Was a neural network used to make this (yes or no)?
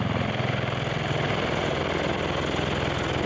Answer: no